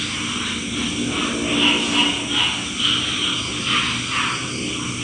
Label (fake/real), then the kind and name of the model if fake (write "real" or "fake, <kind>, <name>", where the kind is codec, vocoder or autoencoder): real